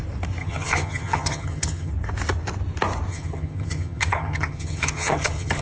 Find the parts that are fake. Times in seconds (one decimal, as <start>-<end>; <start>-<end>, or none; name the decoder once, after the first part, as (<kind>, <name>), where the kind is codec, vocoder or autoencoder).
0.4-1.9 (vocoder, HiFi-GAN); 3.1-5.6